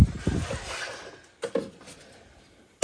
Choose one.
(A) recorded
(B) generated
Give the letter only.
A